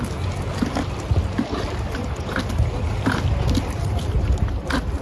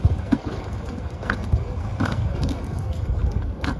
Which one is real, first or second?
first